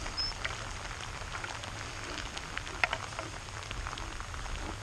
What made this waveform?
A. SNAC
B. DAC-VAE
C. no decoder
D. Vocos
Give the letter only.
C